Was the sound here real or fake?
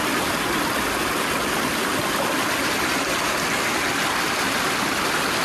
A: real